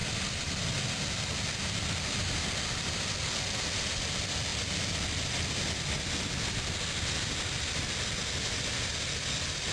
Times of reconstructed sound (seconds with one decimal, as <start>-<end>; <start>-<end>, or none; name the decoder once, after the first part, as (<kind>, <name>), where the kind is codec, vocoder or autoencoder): 1.2-4.5 (vocoder, BigVGAN v2)